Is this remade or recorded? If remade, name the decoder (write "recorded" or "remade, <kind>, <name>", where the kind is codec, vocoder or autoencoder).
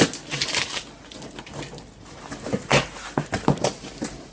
recorded